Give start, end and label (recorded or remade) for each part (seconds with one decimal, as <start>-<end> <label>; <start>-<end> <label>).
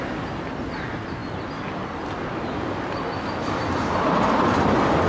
0.0-5.1 recorded